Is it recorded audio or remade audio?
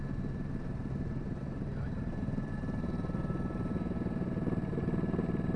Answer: remade